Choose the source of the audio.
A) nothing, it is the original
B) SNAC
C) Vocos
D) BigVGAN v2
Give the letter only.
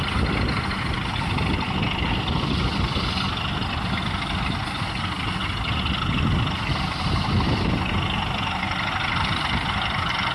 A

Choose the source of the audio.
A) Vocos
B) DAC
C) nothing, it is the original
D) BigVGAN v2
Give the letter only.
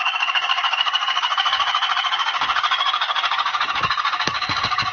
B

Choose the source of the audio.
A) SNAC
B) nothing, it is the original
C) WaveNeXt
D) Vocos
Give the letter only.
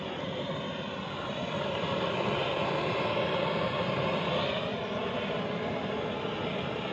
B